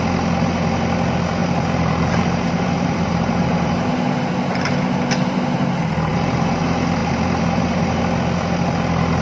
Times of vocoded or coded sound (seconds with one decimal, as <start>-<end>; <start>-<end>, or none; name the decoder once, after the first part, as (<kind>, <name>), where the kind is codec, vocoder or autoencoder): 1.4-3.8 (vocoder, BigVGAN v2); 6.1-6.6; 7.0-8.0